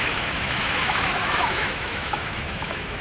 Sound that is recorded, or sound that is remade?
remade